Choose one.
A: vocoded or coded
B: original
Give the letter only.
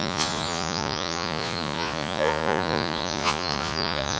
A